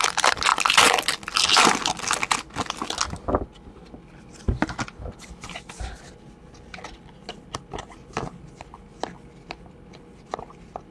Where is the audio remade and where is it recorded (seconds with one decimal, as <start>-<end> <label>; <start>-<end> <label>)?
0.0-10.9 recorded